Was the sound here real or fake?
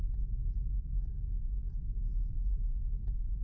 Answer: real